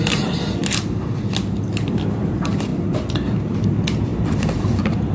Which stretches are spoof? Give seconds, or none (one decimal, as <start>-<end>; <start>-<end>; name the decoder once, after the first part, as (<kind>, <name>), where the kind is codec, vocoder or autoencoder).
0.0-0.6 (vocoder, BigVGAN v2); 1.6-2.7; 3.4-5.1

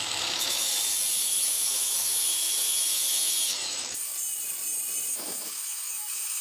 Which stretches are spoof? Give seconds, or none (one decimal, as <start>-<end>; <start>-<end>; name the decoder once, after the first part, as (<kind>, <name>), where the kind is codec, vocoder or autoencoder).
0.0-0.7 (autoencoder, DAC-VAE); 1.2-4.1; 5.1-6.4

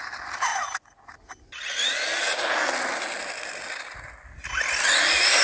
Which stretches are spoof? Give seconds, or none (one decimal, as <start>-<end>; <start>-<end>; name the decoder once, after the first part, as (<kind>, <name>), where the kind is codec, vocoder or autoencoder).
none

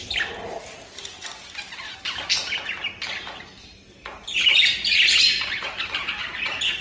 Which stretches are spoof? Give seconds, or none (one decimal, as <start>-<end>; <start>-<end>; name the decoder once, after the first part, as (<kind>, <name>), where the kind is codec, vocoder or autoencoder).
none

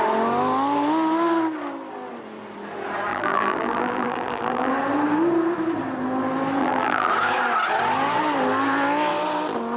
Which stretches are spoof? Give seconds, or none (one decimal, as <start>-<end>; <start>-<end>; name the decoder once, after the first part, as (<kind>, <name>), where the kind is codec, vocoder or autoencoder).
3.1-4.7 (vocoder, BigVGAN v2); 6.6-7.1